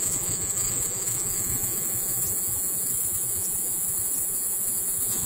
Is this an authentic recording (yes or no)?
no